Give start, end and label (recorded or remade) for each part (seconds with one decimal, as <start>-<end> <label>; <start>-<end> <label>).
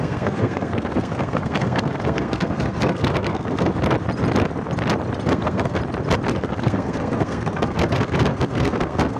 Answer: 0.0-3.7 remade; 3.7-5.3 recorded; 5.3-5.8 remade; 5.8-6.3 recorded; 6.3-9.2 remade